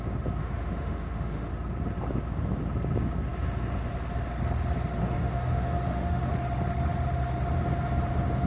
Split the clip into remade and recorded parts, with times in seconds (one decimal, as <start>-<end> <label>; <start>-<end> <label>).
0.0-0.4 recorded; 0.4-1.5 remade; 1.5-5.0 recorded; 5.0-6.3 remade; 6.3-8.5 recorded